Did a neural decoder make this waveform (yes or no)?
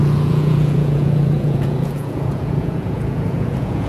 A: yes